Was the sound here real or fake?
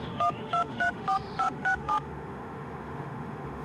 fake